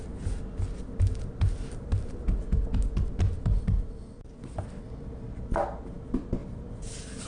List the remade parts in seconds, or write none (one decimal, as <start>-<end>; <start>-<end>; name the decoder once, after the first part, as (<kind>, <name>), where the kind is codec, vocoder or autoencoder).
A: none